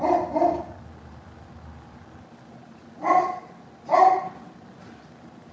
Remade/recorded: recorded